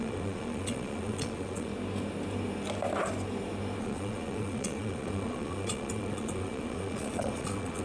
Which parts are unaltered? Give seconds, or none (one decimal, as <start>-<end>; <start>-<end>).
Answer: 1.7-3.8